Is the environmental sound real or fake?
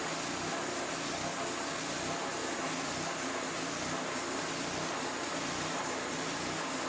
real